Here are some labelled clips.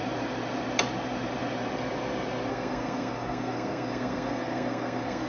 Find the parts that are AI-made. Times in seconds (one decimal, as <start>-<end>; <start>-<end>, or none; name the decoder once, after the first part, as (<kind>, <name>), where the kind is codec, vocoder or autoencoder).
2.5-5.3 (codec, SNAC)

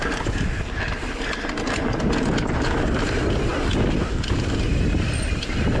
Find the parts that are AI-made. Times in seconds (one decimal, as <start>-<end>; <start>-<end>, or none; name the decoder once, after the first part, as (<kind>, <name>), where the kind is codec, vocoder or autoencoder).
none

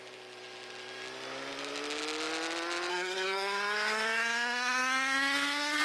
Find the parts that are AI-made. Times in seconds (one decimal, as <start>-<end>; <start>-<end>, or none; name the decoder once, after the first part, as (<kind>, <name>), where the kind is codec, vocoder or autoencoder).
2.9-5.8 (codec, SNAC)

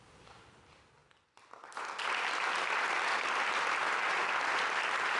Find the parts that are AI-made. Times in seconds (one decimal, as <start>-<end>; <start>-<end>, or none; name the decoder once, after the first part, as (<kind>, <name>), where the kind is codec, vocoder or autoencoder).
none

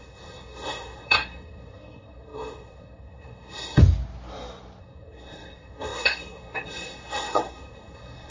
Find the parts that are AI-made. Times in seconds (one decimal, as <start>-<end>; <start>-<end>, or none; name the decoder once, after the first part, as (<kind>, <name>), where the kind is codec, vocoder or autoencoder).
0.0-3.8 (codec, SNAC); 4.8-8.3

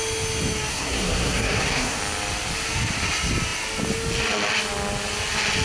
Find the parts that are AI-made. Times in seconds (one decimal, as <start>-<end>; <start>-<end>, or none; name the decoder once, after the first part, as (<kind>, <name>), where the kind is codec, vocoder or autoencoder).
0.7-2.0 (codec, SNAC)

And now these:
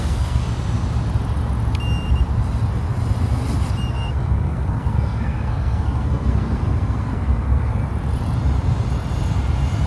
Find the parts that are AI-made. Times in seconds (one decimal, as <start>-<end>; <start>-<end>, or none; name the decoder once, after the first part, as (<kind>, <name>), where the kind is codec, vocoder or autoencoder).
0.0-0.4 (codec, SNAC); 3.9-7.8

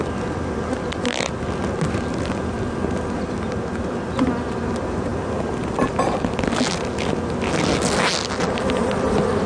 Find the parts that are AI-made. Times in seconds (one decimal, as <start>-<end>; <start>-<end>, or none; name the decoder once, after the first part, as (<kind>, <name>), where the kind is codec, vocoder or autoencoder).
none